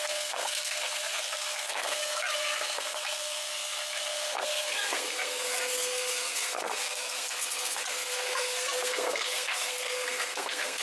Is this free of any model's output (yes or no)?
no